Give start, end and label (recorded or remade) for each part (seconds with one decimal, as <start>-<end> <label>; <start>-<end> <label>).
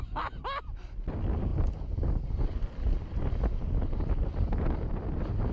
0.0-5.5 recorded